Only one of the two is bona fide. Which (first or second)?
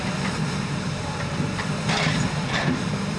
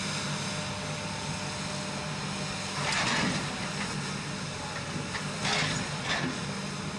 second